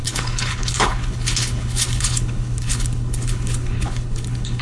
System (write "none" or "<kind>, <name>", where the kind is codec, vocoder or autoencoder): codec, HILCodec